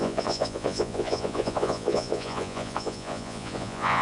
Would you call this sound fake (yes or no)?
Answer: yes